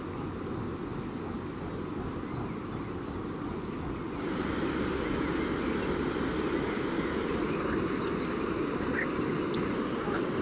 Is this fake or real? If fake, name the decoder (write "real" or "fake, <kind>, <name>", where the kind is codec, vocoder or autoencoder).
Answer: real